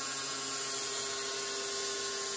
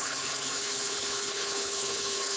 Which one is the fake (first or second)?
second